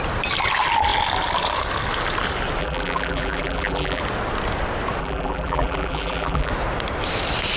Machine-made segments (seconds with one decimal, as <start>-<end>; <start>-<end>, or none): 2.6-4.0; 5.0-6.5